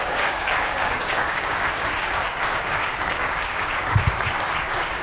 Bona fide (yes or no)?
no